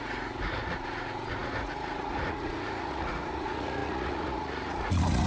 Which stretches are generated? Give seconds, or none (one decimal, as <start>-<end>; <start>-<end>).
0.0-5.3